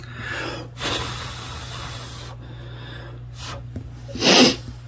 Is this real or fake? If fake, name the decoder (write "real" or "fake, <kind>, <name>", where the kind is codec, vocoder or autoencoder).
real